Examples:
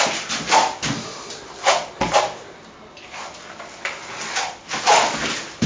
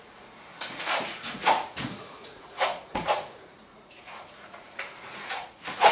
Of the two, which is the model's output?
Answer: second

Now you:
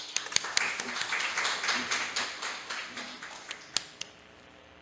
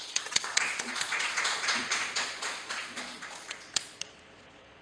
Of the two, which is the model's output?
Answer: second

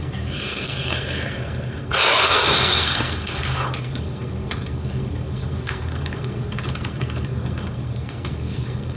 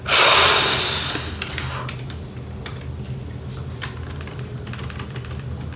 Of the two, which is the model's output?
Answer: first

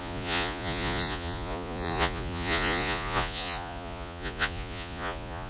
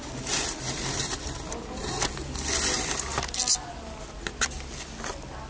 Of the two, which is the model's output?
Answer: first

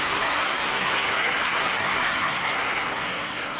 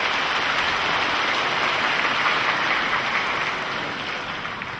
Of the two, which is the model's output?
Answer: first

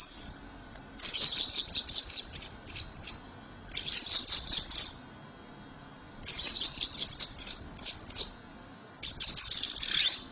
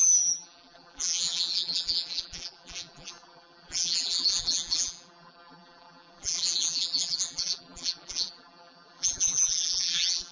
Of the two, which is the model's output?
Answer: second